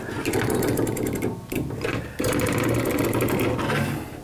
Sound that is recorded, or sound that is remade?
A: recorded